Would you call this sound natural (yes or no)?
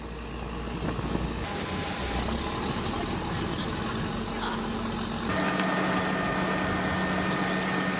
yes